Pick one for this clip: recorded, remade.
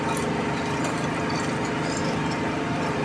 remade